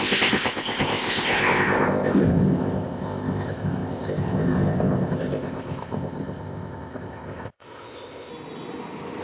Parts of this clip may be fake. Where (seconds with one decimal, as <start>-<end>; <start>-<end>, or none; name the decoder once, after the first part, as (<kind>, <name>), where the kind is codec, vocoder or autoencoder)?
0.0-8.3 (codec, ZipCodec)